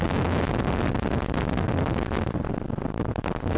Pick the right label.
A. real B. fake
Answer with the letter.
A